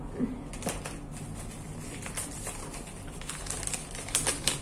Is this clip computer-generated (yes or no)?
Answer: no